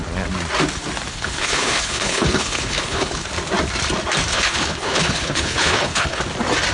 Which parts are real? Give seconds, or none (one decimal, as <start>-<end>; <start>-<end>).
0.0-1.1; 3.3-4.3; 6.2-6.7